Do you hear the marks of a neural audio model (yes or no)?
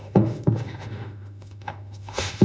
yes